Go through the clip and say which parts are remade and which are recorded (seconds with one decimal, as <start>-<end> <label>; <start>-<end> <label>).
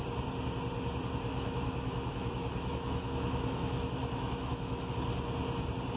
0.0-1.3 recorded; 1.3-4.9 remade; 4.9-6.0 recorded